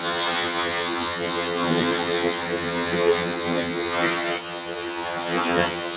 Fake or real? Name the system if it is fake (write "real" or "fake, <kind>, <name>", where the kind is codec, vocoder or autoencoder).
fake, vocoder, HiFi-GAN